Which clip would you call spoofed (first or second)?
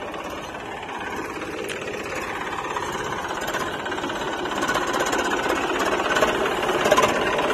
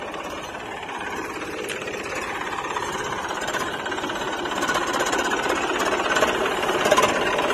second